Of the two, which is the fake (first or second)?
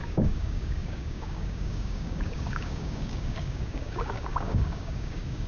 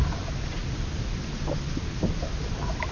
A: first